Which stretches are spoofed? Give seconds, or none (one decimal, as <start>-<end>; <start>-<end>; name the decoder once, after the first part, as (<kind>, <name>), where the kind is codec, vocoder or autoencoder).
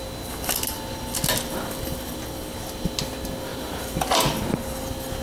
none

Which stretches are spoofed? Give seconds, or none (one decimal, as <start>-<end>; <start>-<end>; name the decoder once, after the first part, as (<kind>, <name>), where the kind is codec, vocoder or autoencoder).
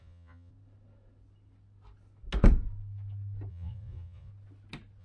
0.0-0.5 (vocoder, Vocos); 3.5-4.3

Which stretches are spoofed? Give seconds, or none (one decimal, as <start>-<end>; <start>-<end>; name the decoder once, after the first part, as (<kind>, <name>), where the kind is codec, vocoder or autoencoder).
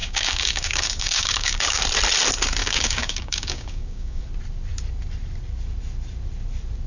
0.0-1.8 (codec, DAC); 2.6-4.2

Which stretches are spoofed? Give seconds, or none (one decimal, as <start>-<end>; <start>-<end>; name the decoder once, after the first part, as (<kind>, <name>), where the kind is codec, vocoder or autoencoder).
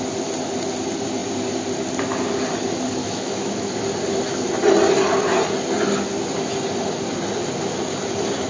3.0-3.7 (autoencoder, DAC-VAE)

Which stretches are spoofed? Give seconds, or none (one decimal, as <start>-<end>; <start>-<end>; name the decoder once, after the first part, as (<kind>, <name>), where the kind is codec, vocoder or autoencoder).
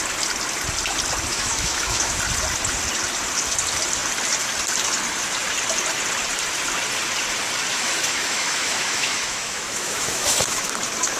1.3-2.2 (autoencoder, DAC-VAE); 7.7-10.7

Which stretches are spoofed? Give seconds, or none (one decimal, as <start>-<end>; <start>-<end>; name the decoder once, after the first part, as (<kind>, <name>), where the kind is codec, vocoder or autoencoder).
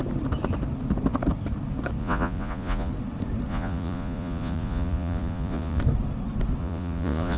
2.0-2.9 (vocoder, Vocos); 3.5-5.8; 6.6-7.4